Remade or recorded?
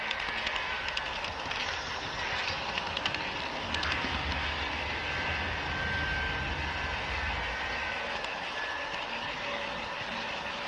recorded